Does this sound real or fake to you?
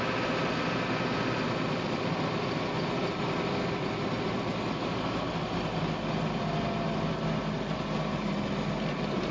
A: real